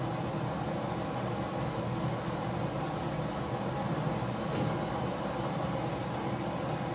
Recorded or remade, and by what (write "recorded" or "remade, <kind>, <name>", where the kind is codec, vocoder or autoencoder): recorded